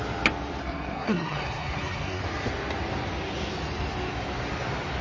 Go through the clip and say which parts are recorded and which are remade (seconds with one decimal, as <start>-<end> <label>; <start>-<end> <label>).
0.0-0.6 recorded; 0.6-2.2 remade; 2.2-5.0 recorded